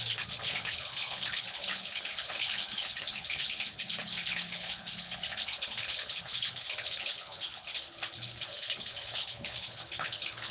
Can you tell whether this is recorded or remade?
remade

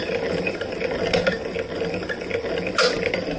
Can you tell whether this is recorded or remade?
recorded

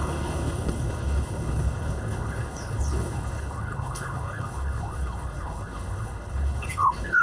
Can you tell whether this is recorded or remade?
remade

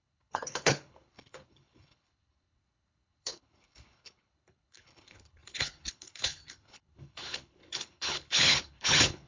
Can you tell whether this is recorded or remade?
remade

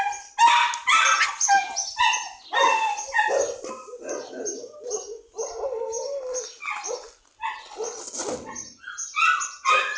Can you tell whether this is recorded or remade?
recorded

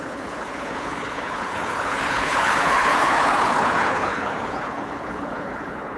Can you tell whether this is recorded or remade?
remade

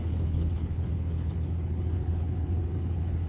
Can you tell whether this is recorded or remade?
remade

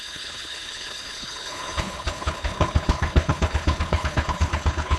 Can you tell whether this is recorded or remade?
remade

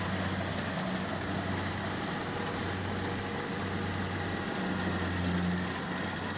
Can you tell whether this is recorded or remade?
recorded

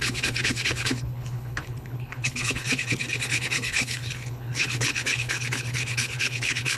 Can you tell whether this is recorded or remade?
remade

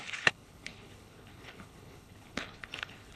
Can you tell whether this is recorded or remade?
remade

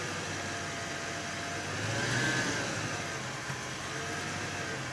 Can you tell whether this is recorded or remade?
recorded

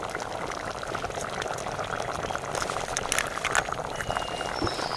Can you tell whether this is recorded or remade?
recorded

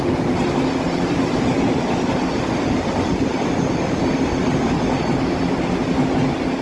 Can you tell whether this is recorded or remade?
recorded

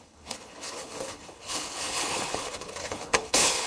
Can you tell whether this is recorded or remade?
remade